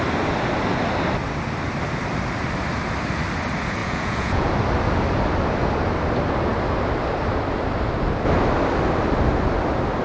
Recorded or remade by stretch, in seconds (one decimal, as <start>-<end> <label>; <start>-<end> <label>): 0.0-3.8 recorded; 3.8-4.5 remade; 4.5-10.0 recorded